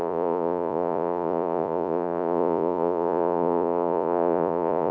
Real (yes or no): no